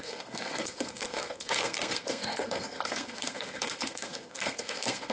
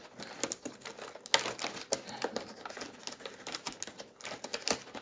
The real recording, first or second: second